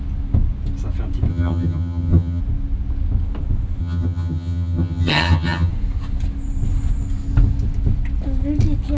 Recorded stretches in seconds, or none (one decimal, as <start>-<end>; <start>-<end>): 0.0-1.3; 2.4-3.8; 5.7-9.0